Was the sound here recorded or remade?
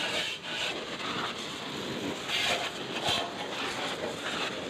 recorded